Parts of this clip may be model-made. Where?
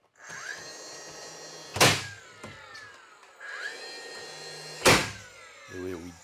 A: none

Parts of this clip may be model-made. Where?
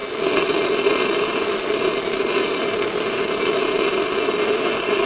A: none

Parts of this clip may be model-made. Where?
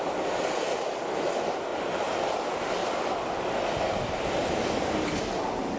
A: none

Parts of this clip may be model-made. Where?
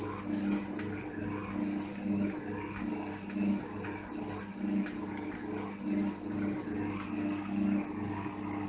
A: none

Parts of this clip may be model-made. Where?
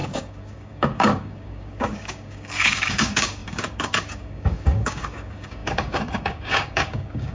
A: 0.0-7.3 (codec, DAC)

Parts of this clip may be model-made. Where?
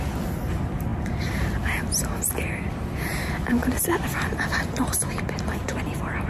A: none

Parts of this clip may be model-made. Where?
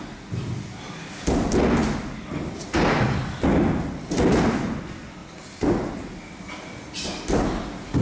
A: none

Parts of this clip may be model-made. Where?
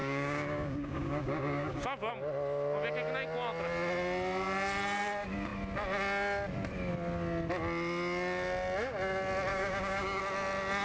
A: 0.0-2.1 (codec, DAC); 9.5-10.2